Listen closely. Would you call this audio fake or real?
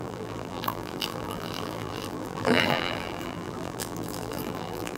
fake